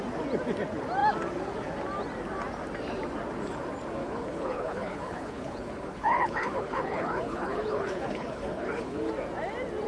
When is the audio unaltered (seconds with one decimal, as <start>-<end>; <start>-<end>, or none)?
0.0-4.0; 9.1-9.9